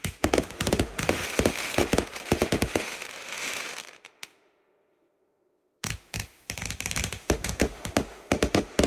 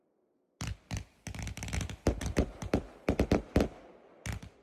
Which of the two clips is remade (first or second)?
first